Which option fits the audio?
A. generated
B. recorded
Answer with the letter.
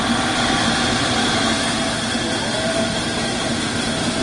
B